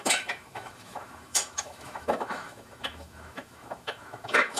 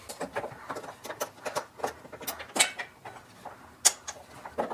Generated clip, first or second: first